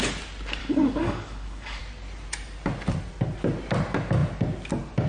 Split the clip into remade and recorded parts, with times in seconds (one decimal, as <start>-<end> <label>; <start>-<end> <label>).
0.0-0.6 recorded; 0.6-1.8 remade; 1.8-5.1 recorded